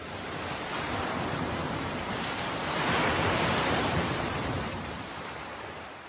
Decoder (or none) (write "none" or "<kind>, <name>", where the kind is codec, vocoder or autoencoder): vocoder, BigVGAN v2